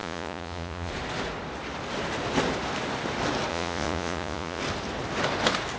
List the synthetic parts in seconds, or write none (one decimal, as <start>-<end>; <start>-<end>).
0.0-0.9; 3.5-4.6